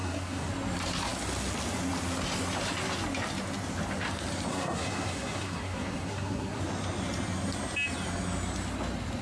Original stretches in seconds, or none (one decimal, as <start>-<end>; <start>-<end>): 0.5-4.5; 6.6-9.2